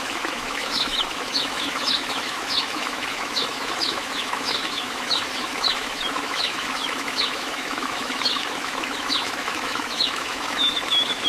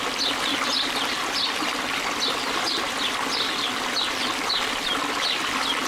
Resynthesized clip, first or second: first